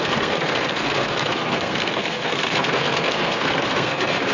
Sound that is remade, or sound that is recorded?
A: remade